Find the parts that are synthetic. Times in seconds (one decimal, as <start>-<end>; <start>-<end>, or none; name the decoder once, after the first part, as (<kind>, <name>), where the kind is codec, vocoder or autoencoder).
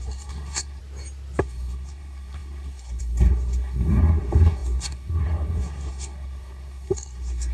0.0-0.8 (codec, SNAC); 1.4-7.5